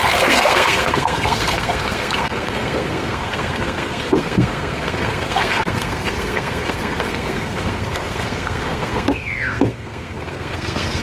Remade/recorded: remade